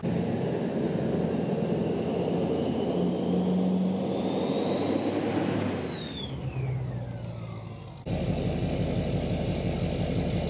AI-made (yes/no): no